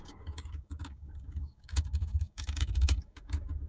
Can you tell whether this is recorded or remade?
remade